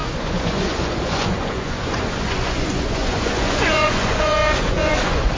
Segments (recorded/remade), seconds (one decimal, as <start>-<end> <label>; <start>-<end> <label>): 0.0-5.4 remade